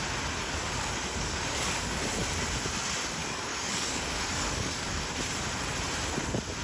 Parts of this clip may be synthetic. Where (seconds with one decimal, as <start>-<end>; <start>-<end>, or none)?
0.4-1.9; 3.2-5.0